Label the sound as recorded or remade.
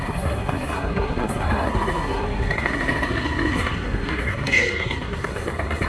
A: remade